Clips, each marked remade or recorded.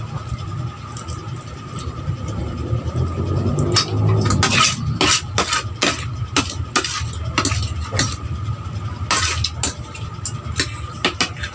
recorded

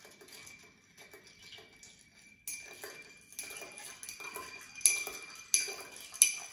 recorded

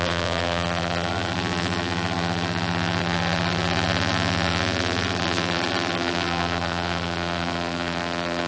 remade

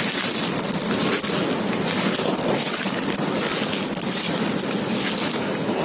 recorded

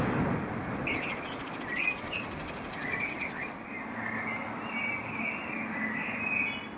recorded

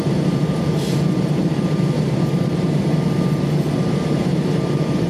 remade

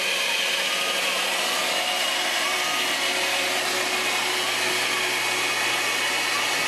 recorded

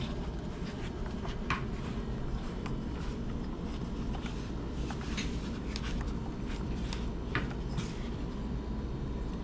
remade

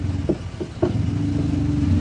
recorded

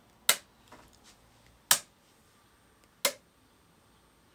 recorded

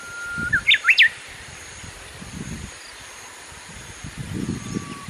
recorded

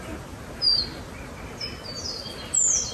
recorded